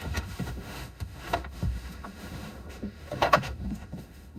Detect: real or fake fake